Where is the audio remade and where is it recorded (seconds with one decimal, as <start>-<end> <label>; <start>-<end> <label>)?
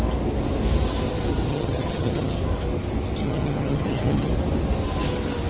0.0-1.5 recorded; 1.5-2.4 remade; 2.4-3.2 recorded; 3.2-4.3 remade; 4.3-5.5 recorded